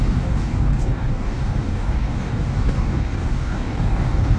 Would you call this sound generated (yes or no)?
yes